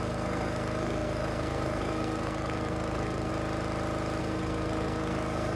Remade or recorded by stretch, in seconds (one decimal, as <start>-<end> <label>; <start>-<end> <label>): 0.0-3.3 remade; 3.3-4.2 recorded; 4.2-5.6 remade